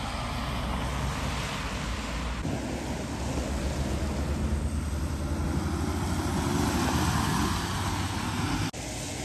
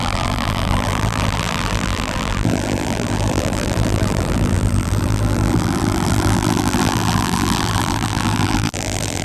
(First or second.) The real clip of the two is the first